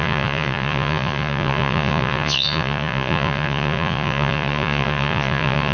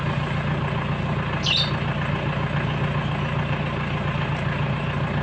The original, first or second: second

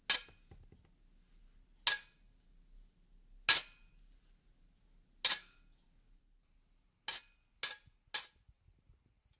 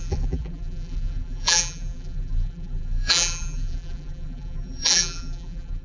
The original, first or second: first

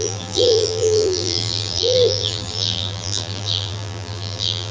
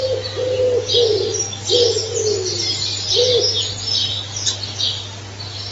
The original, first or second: second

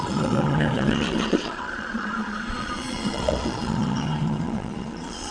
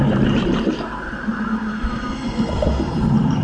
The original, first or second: second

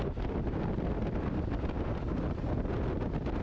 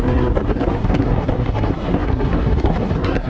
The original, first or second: first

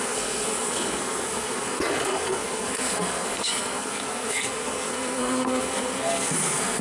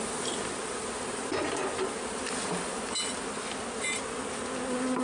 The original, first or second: second